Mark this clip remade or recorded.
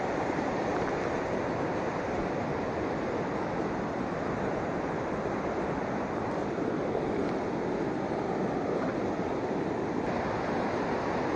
recorded